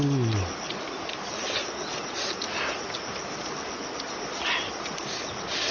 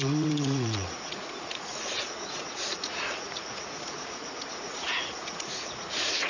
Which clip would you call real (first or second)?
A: first